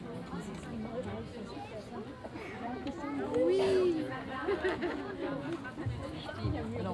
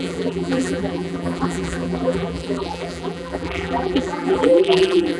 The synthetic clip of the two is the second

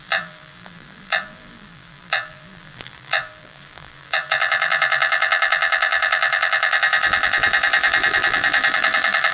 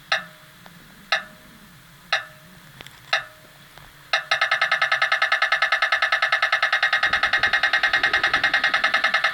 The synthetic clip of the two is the first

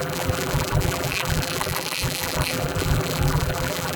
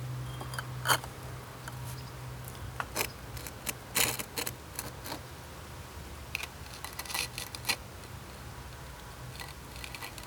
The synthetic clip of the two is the first